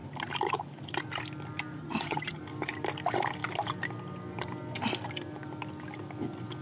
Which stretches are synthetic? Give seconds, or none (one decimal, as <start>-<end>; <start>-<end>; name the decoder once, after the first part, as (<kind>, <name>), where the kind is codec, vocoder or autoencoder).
1.8-2.4 (vocoder, HiFi-GAN)